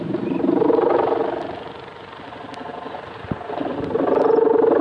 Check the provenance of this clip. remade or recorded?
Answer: recorded